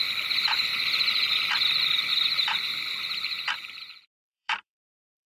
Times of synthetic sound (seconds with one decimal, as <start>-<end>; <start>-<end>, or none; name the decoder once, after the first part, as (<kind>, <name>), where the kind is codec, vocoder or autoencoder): 0.0-0.7 (vocoder, BigVGAN v2); 2.0-5.3